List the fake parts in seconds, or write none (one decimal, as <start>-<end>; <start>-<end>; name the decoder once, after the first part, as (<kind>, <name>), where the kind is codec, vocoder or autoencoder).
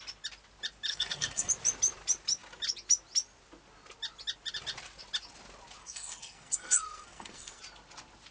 0.9-1.5 (codec, SNAC); 5.8-7.6